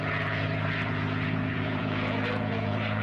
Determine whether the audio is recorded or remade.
remade